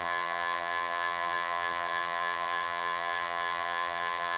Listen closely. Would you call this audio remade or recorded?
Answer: remade